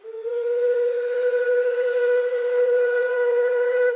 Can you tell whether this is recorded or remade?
remade